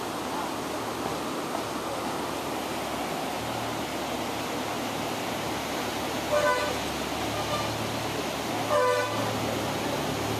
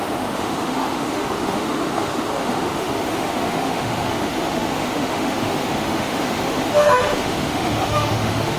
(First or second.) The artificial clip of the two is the second